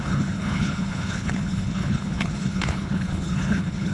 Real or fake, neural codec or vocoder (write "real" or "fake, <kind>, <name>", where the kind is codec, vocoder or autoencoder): fake, codec, HILCodec